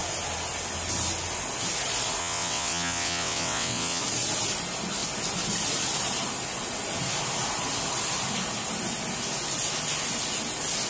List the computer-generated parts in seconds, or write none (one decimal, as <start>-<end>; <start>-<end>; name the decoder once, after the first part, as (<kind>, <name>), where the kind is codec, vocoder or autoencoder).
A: 2.2-4.0 (vocoder, WaveNeXt)

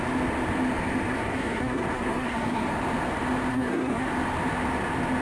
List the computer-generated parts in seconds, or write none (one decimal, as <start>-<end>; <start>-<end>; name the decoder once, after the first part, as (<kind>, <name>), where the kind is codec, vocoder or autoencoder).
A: 1.1-2.7 (codec, SNAC); 3.5-4.1

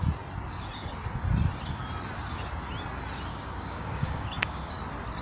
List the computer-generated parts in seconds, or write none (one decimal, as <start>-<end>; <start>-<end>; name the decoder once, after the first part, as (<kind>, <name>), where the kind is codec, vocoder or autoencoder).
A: 3.3-4.7 (codec, DAC)

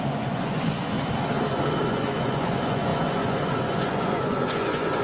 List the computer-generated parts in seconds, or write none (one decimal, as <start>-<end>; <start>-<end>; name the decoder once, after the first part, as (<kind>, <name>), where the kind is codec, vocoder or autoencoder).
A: 0.0-0.9 (vocoder, Vocos); 1.8-5.0

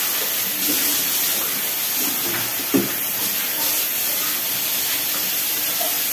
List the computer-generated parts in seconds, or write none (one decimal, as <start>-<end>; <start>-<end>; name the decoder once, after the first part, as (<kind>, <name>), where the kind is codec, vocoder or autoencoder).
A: none

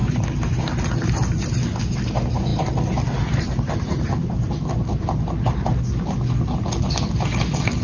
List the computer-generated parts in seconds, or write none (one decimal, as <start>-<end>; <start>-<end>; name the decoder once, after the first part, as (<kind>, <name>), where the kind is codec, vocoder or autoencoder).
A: 0.0-1.8 (vocoder, BigVGAN v2); 2.5-5.8